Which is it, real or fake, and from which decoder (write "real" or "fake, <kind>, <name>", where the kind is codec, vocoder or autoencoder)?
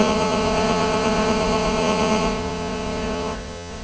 fake, vocoder, Vocos